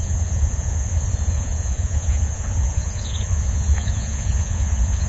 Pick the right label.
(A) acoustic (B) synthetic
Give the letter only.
B